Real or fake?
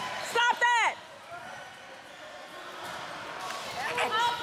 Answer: real